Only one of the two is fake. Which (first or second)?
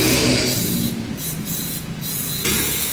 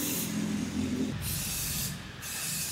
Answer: first